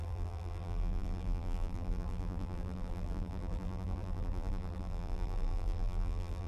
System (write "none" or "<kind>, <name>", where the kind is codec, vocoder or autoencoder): vocoder, BigVGAN v2